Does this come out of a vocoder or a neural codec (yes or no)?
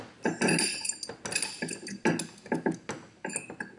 no